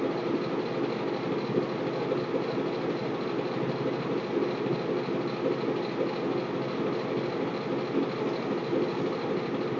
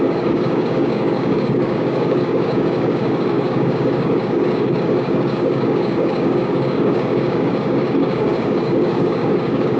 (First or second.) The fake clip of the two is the second